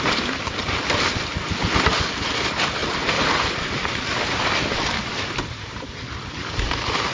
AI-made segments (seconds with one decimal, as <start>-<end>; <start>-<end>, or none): 0.0-2.8; 3.3-7.1